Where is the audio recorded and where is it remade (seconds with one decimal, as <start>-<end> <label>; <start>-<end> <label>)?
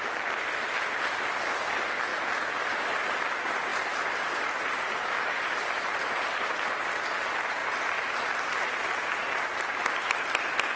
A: 0.0-2.1 recorded; 2.1-3.2 remade; 3.2-3.7 recorded; 3.7-6.6 remade; 6.6-10.8 recorded